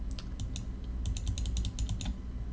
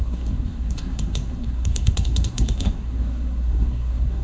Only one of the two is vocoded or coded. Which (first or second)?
second